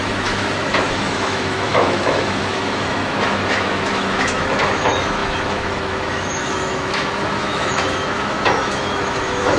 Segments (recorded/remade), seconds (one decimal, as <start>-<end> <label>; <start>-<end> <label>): 0.0-9.6 remade